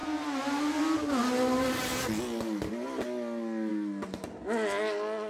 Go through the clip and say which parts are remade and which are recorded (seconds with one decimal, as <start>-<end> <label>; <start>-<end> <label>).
0.0-5.3 recorded